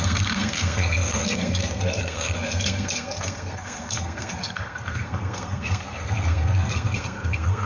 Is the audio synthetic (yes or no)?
yes